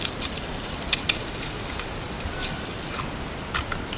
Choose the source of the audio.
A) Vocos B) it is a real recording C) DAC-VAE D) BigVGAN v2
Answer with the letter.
B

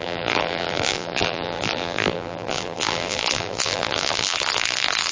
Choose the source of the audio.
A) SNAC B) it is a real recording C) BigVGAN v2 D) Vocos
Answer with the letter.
C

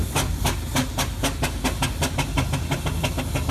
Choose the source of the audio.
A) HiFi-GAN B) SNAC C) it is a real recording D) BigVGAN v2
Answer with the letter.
C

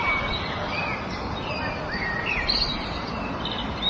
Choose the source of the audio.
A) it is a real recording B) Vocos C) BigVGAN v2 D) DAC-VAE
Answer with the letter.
A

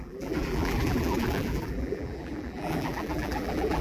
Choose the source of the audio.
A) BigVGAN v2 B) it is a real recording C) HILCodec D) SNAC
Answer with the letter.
A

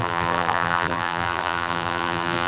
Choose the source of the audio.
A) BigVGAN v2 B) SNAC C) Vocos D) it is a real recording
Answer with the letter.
A